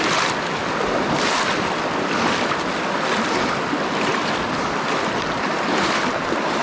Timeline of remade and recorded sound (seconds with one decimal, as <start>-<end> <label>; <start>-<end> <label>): 0.0-6.6 recorded